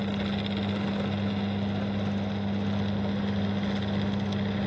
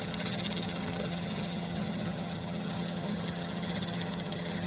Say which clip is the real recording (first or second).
first